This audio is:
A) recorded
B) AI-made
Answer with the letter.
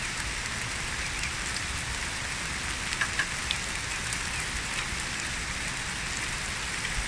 A